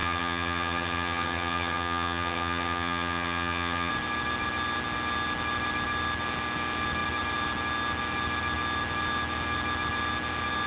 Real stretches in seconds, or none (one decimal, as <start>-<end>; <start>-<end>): 3.9-10.7